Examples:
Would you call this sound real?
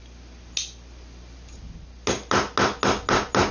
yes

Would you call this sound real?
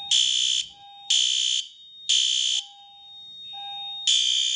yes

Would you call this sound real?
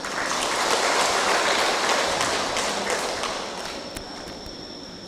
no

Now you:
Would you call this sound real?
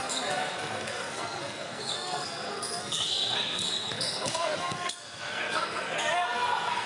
no